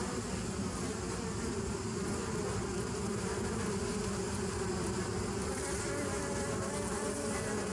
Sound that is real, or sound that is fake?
real